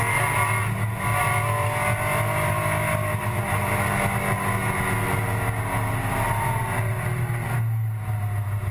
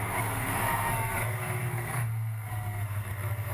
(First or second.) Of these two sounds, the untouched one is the first